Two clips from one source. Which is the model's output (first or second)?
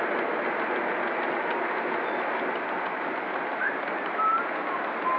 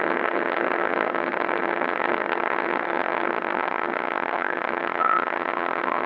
second